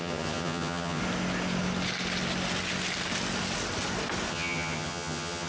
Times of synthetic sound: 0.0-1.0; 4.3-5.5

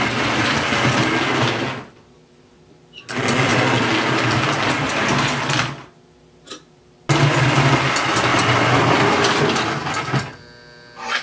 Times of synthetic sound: none

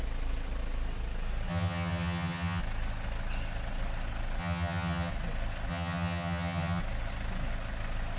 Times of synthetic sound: 1.5-2.6; 4.4-5.1; 5.7-6.8

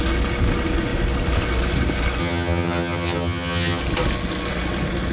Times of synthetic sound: 2.2-3.8

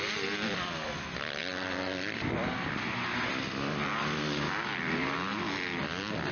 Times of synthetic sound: none

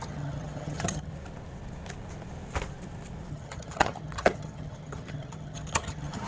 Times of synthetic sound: 0.0-1.1; 3.3-6.3

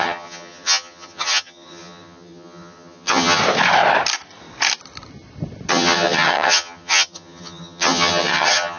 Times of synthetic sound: 0.0-3.4; 5.7-8.8

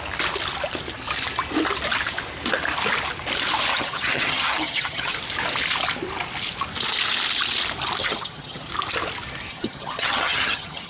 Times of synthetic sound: 3.7-5.1; 8.0-8.7; 9.5-10.9